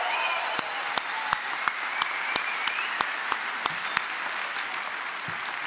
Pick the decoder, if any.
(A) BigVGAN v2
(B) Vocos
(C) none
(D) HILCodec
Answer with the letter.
C